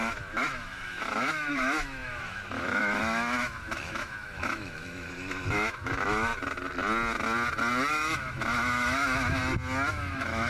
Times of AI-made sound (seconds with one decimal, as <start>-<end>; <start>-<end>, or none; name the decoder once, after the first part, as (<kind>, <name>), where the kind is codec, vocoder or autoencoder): 0.0-6.3 (autoencoder, DAC-VAE); 7.9-9.4; 9.9-10.5